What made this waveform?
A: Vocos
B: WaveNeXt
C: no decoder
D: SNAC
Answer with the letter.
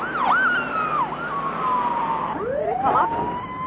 C